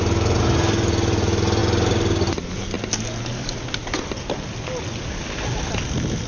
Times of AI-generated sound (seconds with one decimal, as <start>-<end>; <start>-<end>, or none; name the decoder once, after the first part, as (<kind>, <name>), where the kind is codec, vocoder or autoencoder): none